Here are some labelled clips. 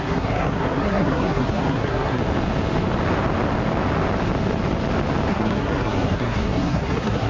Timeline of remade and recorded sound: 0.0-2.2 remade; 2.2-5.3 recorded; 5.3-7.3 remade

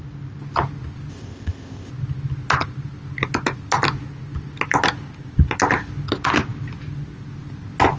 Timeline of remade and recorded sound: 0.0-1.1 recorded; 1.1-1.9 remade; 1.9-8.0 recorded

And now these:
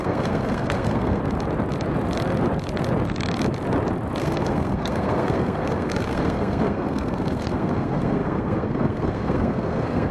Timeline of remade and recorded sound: 0.0-1.2 remade; 1.2-4.2 recorded; 4.2-10.1 remade

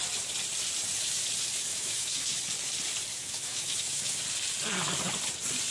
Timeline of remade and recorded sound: 0.0-1.7 recorded; 1.7-2.4 remade; 2.4-3.1 recorded; 3.1-4.2 remade; 4.2-5.7 recorded